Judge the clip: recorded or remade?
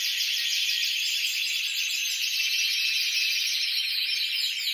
recorded